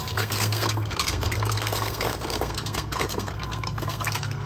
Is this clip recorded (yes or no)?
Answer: no